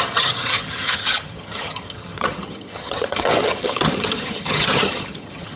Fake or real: fake